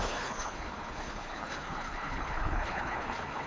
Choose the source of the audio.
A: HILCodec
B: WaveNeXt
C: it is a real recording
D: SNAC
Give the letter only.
A